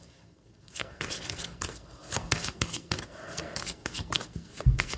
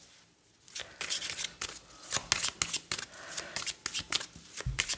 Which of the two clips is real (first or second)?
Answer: second